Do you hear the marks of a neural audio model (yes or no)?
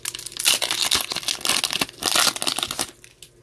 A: no